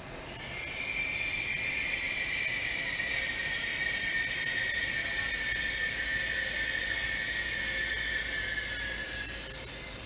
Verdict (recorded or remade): recorded